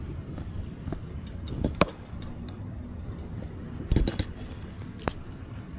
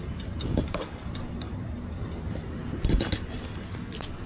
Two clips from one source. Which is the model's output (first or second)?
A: first